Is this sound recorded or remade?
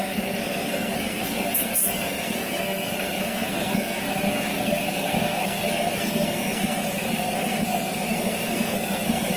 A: remade